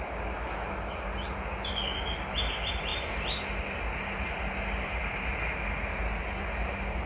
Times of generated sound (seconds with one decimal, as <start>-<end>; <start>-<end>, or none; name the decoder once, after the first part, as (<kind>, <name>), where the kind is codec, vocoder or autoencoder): none